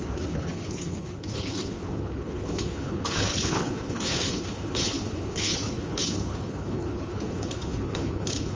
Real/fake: fake